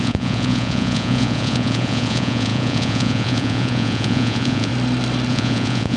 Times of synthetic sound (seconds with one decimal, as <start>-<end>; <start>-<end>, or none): 0.0-4.7; 5.3-6.0